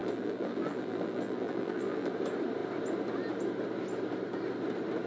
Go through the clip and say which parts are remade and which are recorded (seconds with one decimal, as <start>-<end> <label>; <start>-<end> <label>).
0.0-2.1 remade; 2.1-5.1 recorded